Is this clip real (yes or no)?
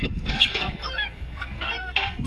no